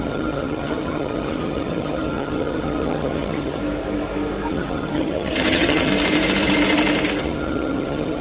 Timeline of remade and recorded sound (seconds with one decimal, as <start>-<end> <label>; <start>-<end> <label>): 0.0-3.6 remade; 3.6-4.5 recorded; 4.5-5.9 remade; 5.9-7.2 recorded; 7.2-8.2 remade